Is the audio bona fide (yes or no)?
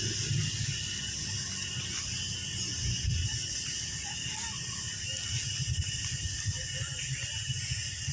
yes